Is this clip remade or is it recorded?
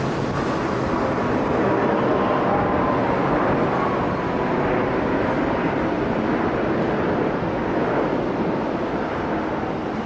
recorded